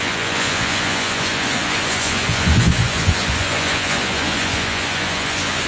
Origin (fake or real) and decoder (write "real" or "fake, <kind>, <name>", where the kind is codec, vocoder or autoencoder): fake, vocoder, Vocos